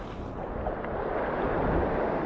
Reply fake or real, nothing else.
real